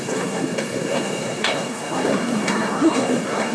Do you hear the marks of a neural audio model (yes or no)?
yes